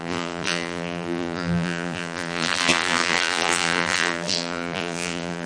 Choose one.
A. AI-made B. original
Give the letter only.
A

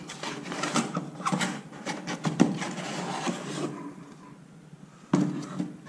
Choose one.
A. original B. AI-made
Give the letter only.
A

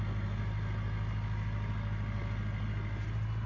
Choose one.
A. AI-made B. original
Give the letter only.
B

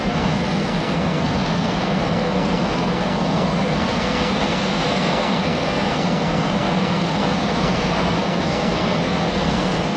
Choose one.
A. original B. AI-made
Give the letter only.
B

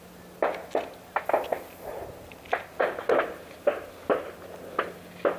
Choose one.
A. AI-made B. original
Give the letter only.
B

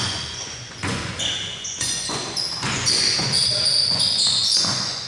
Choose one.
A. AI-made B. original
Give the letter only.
A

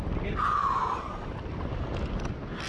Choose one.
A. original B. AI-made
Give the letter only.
A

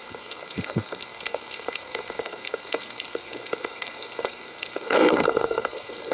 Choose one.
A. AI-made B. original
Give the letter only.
A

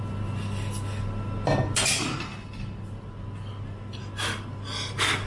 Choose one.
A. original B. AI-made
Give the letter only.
A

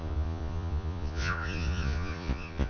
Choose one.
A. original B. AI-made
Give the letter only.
B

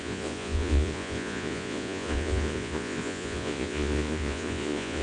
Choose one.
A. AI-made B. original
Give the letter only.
A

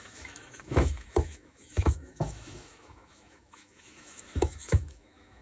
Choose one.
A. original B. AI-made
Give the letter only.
B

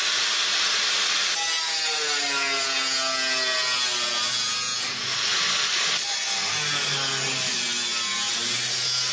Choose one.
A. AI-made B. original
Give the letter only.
B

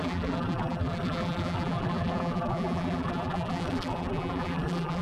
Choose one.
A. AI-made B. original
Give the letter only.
A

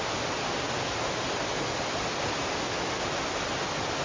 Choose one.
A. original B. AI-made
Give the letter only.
A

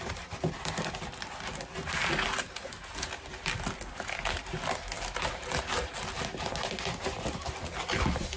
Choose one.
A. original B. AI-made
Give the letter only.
A